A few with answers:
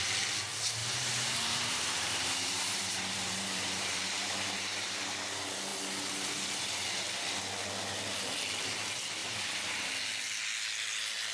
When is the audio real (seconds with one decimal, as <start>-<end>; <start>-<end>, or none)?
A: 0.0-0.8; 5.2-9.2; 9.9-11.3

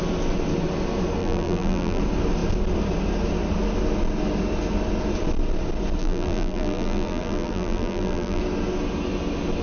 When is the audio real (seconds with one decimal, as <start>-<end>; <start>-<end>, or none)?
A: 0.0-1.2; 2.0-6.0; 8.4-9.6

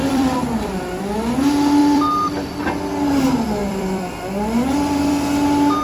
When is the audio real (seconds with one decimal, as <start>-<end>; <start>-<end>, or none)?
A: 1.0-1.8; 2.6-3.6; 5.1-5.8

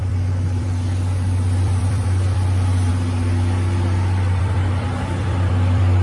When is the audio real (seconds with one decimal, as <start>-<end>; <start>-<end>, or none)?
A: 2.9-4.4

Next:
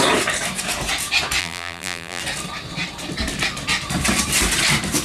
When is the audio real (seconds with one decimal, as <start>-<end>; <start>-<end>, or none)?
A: 0.0-1.4; 2.2-5.0

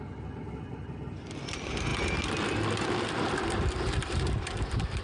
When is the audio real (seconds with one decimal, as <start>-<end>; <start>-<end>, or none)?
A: 1.9-3.0